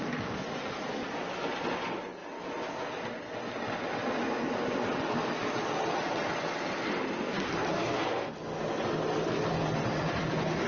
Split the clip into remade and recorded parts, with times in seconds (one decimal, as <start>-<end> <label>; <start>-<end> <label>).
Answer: 0.0-7.7 recorded; 7.7-8.3 remade; 8.3-10.7 recorded